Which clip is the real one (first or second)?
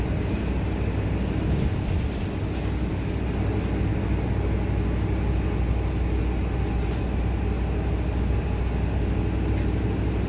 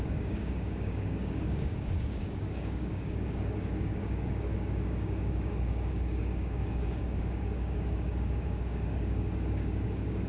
first